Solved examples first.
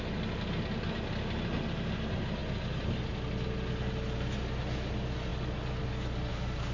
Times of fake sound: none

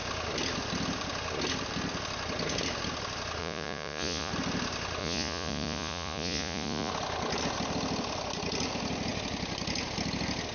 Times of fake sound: 3.4-4.3 (vocoder, Vocos); 5.0-6.9

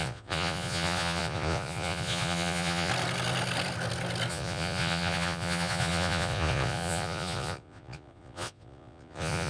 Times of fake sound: 0.0-2.9 (vocoder, Vocos); 4.3-9.5

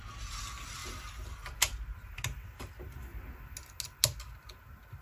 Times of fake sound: none

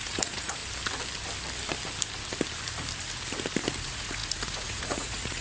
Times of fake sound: 0.0-0.6 (vocoder, Vocos); 3.8-5.4

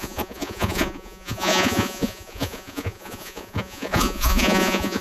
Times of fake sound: 0.0-5.0 (vocoder, Vocos)

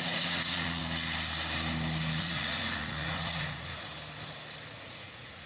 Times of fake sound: 0.0-0.8 (vocoder, Vocos); 2.2-3.9; 4.7-5.5